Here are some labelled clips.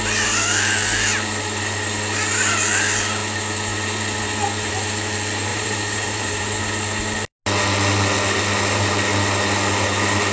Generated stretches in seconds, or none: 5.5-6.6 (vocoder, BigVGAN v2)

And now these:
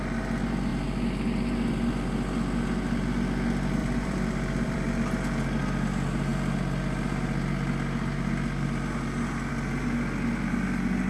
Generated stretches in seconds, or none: 3.8-5.6 (vocoder, BigVGAN v2)

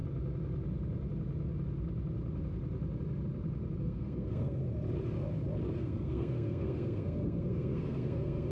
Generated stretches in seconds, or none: 3.8-4.6 (codec, SNAC); 5.8-8.5

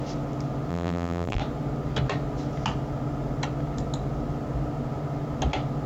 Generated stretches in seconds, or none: 0.7-1.4 (vocoder, BigVGAN v2)

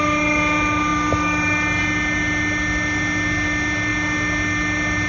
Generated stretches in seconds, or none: none

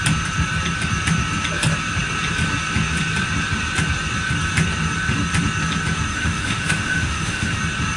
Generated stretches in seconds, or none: 6.1-7.6 (autoencoder, DAC-VAE)